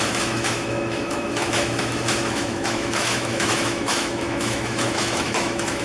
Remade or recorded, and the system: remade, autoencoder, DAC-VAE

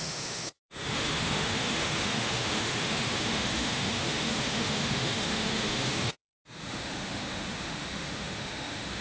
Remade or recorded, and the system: remade, autoencoder, DAC-VAE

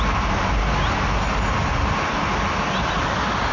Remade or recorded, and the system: recorded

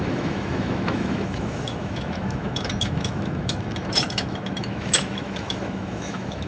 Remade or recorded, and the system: remade, autoencoder, DAC-VAE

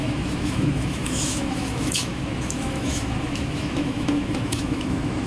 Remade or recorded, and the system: remade, autoencoder, DAC-VAE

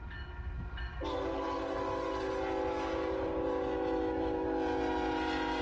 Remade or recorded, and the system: recorded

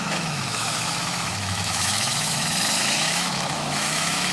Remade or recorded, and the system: remade, autoencoder, DAC-VAE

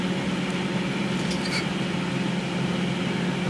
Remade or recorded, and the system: recorded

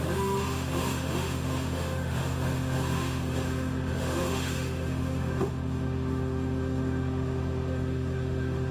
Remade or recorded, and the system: remade, autoencoder, DAC-VAE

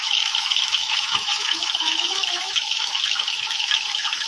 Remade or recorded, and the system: remade, autoencoder, DAC-VAE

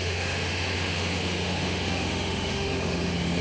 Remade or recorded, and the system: remade, autoencoder, DAC-VAE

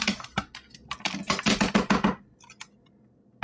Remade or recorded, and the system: recorded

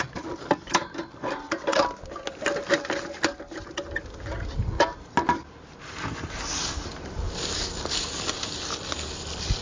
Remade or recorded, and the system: recorded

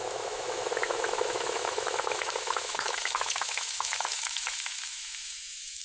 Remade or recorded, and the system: remade, autoencoder, DAC-VAE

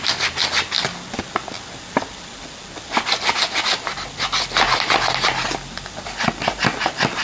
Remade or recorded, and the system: recorded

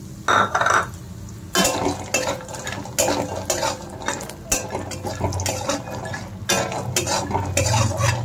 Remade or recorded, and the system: recorded